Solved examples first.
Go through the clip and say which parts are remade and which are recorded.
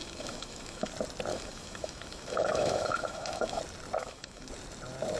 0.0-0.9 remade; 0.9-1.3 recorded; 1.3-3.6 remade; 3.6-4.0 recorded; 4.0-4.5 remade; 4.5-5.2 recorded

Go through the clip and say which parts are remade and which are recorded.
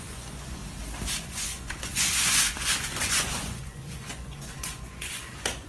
0.0-0.6 remade; 0.6-1.2 recorded; 1.2-5.7 remade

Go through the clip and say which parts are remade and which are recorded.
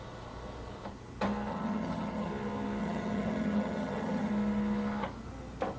0.0-1.5 recorded; 1.5-2.3 remade; 2.3-2.8 recorded; 2.8-4.3 remade; 4.3-5.8 recorded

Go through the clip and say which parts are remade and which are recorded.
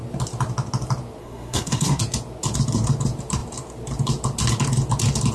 0.0-1.2 recorded; 1.2-2.0 remade; 2.0-5.3 recorded